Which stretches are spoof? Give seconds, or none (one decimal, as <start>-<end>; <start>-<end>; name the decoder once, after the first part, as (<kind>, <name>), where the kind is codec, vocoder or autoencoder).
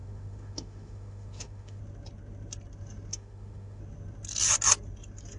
0.0-1.8 (autoencoder, DAC-VAE); 3.1-3.8